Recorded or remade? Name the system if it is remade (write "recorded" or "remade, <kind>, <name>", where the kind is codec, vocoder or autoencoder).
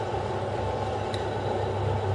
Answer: recorded